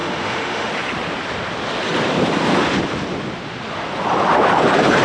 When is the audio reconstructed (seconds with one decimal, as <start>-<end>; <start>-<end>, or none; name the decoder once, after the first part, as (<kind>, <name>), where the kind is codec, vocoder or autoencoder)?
0.0-0.7 (autoencoder, DAC-VAE)